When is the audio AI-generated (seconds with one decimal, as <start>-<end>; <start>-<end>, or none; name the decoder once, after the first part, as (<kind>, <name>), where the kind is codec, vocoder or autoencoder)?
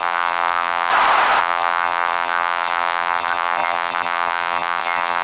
0.0-0.9 (vocoder, BigVGAN v2); 1.4-5.2